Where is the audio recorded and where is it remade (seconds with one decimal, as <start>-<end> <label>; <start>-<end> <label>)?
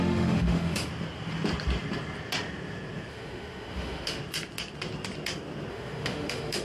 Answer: 0.0-0.9 remade; 0.9-3.1 recorded; 3.1-4.2 remade; 4.2-5.7 recorded; 5.7-6.6 remade